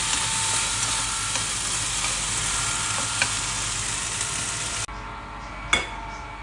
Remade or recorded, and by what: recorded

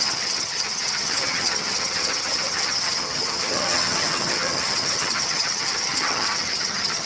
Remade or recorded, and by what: remade, vocoder, HiFi-GAN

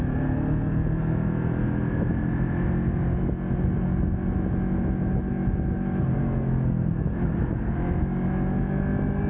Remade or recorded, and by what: recorded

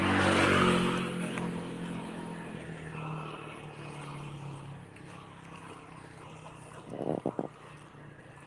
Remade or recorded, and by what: recorded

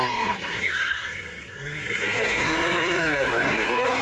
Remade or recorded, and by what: remade, codec, SNAC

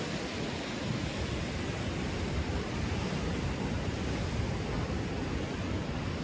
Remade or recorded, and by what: recorded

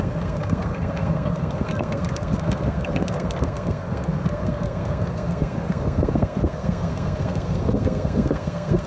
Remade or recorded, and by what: remade, codec, SNAC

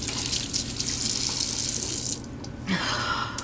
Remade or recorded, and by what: recorded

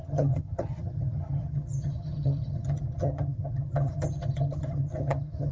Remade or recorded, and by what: remade, vocoder, HiFi-GAN